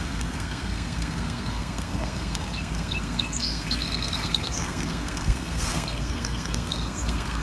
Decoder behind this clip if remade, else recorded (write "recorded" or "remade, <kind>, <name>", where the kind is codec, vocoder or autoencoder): remade, codec, SNAC